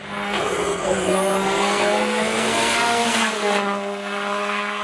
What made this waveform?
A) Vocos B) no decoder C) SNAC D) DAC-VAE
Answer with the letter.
C